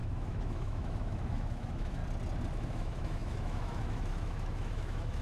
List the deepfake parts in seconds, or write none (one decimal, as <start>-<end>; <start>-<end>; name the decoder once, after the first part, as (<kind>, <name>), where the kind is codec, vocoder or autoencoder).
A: 0.0-2.0 (autoencoder, DAC-VAE); 2.5-5.2